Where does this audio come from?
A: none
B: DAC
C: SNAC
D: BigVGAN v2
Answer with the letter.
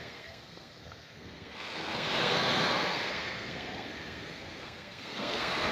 C